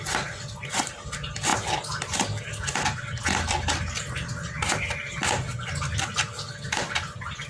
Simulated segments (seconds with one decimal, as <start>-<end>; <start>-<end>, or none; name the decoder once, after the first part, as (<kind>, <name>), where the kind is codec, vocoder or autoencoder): none